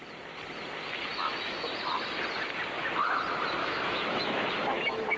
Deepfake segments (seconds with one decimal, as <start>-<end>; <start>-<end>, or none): 1.1-1.7; 3.6-5.2